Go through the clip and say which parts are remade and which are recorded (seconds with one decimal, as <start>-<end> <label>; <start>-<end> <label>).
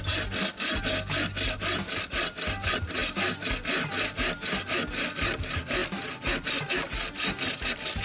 0.0-8.0 recorded